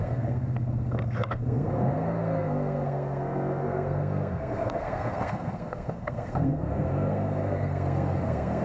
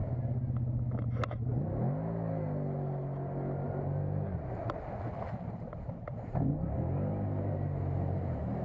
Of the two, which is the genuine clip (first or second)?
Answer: second